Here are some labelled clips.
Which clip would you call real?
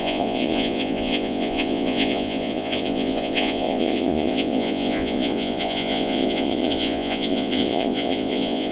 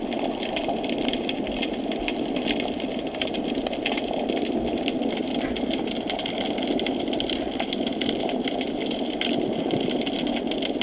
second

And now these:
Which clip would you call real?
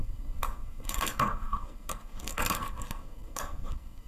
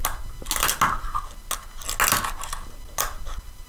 second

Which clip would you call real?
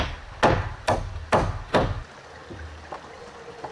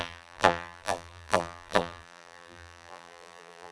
first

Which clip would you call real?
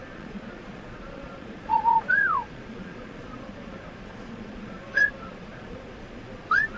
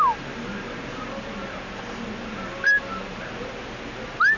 second